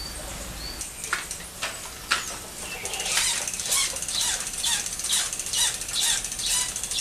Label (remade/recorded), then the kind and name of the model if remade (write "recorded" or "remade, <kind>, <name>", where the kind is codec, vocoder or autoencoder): recorded